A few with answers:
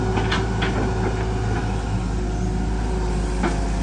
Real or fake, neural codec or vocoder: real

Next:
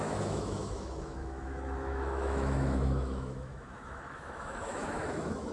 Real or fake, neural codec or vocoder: fake, autoencoder, DAC-VAE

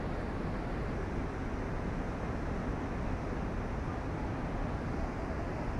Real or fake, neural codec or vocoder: real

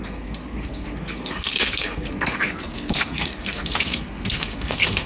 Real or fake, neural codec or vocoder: fake, codec, SNAC